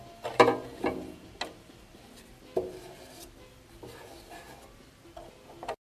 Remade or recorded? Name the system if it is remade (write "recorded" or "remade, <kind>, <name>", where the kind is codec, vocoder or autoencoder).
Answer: recorded